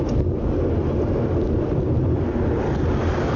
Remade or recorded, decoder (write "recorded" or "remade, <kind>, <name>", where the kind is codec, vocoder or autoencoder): recorded